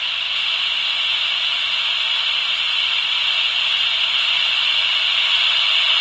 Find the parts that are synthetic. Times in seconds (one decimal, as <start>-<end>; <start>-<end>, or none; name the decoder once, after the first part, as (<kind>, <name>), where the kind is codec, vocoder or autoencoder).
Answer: none